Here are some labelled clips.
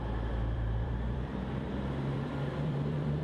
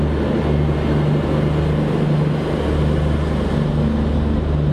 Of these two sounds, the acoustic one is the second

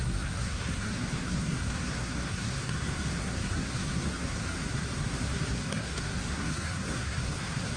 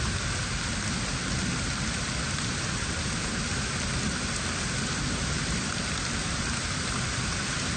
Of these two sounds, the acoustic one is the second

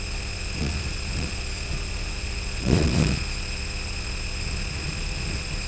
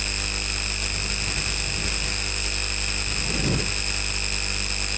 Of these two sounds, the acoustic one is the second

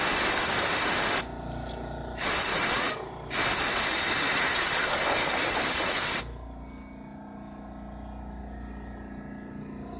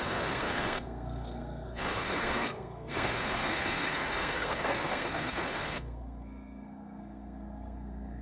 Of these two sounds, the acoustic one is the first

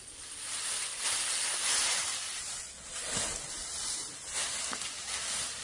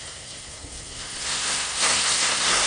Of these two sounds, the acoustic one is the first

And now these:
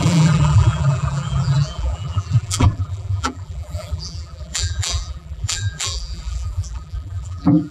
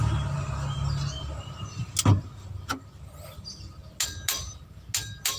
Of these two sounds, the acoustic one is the second